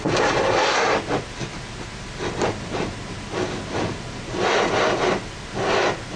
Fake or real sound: real